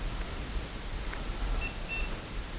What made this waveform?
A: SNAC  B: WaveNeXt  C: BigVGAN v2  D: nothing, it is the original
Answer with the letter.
D